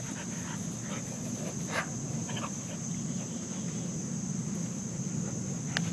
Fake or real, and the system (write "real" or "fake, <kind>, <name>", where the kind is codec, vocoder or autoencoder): real